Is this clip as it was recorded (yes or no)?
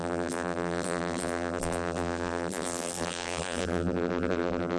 no